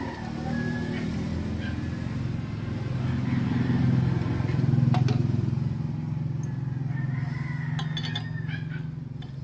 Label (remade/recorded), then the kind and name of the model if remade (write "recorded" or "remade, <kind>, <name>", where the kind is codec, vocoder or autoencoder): recorded